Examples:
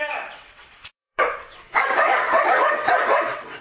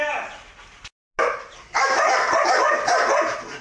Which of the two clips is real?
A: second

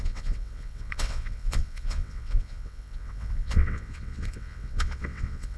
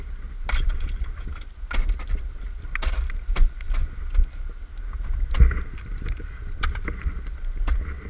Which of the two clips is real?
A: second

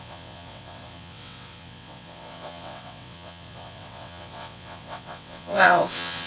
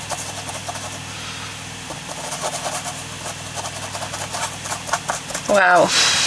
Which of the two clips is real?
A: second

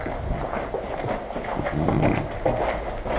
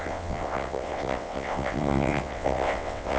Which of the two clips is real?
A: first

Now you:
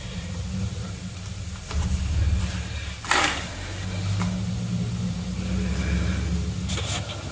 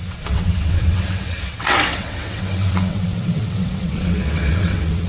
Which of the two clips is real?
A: first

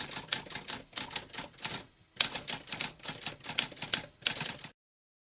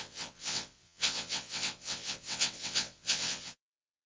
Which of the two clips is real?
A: first